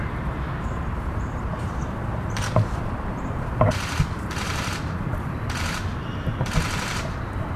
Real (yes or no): no